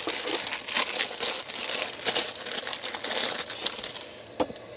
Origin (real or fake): real